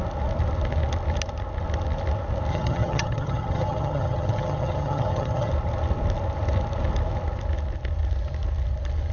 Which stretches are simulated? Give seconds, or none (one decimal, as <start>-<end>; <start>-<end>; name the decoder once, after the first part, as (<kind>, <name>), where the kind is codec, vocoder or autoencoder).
2.5-5.5 (vocoder, HiFi-GAN)